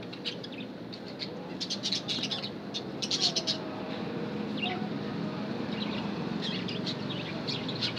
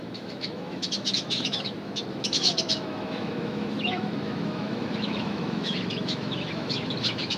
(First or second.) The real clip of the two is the first